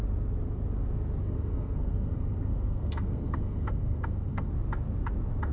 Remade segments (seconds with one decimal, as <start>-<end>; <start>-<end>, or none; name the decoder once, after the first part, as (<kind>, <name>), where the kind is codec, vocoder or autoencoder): 1.2-4.5 (codec, SNAC)